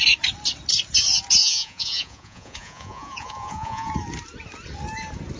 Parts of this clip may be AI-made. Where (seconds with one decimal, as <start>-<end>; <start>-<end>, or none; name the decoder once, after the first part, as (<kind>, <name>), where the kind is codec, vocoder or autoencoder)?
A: 1.4-3.9 (vocoder, Vocos)